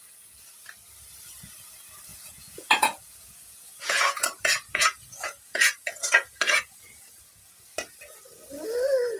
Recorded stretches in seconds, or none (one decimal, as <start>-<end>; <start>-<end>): 0.0-2.1; 7.2-9.2